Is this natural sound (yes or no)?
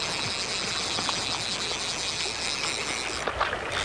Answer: yes